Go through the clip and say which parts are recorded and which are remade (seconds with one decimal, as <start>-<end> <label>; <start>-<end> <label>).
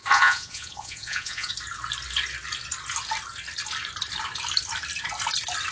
0.0-1.5 remade; 1.5-5.7 recorded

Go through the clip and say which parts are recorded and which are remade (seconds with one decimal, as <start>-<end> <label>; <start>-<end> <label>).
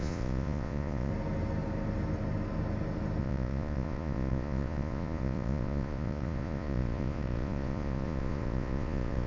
0.0-1.1 remade; 1.1-3.2 recorded; 3.2-9.3 remade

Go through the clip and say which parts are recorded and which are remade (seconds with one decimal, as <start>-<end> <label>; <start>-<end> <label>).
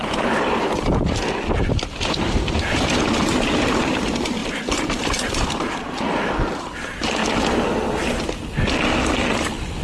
0.0-1.2 remade; 1.2-1.7 recorded; 1.7-7.2 remade; 7.2-9.8 recorded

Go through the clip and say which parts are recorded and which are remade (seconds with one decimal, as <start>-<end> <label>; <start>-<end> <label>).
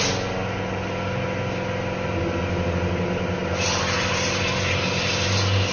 0.0-5.7 recorded